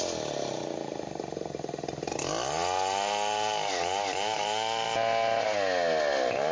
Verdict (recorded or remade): recorded